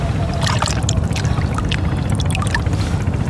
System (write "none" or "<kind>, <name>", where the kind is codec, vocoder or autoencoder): vocoder, BigVGAN v2